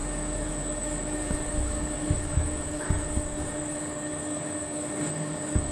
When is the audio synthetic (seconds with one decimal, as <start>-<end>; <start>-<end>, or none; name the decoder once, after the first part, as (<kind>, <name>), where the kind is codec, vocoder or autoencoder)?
0.0-5.7 (codec, DAC)